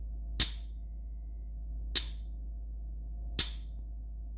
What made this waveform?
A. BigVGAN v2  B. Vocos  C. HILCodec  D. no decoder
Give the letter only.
D